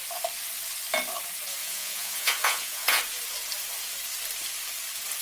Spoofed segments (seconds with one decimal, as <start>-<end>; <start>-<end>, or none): 1.6-3.0